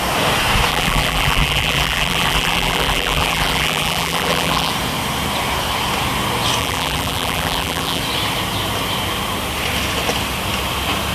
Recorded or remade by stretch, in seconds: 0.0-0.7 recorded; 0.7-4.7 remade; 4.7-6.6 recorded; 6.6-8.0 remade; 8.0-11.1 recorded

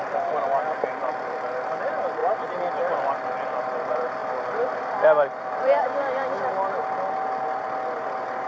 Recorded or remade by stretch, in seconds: 0.0-1.0 recorded; 1.0-1.6 remade; 1.6-4.2 recorded; 4.2-6.8 remade; 6.8-8.5 recorded

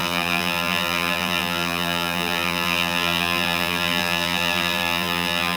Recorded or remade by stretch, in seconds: 0.0-5.6 remade

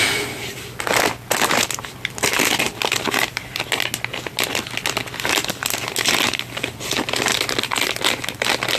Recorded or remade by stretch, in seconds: 0.0-8.8 recorded

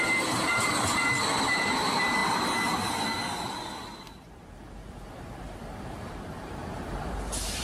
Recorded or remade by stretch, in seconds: 0.0-2.2 remade; 2.2-5.8 recorded; 5.8-7.6 remade